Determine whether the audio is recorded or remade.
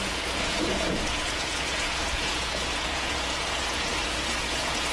remade